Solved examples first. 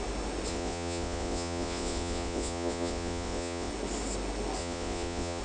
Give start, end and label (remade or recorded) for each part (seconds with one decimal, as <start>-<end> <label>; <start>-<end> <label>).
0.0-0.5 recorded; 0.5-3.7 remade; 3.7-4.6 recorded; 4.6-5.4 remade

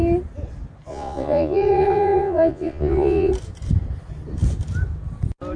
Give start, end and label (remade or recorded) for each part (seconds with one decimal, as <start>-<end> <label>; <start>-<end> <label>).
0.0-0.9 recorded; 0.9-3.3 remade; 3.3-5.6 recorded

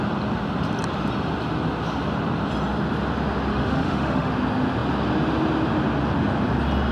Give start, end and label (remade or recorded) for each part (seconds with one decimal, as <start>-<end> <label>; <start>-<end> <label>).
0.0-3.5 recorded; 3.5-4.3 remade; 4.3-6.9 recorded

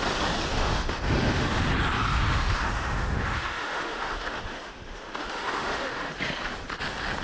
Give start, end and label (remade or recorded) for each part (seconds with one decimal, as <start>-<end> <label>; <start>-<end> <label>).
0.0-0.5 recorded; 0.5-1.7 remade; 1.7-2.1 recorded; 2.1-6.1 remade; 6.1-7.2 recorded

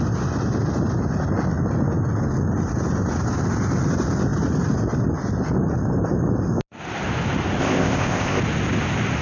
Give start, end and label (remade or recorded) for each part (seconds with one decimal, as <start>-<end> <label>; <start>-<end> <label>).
0.0-7.6 recorded; 7.6-8.4 remade; 8.4-9.2 recorded